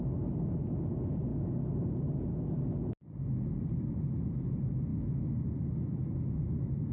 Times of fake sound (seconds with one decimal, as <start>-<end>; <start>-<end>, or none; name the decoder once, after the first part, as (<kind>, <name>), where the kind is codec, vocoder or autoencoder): none